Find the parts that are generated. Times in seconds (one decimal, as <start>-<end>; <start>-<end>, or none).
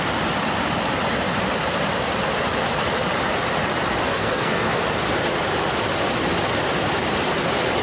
4.1-4.8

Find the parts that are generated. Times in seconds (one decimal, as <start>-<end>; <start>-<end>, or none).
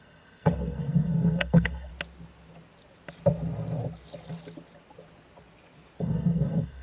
0.0-1.9; 6.0-6.8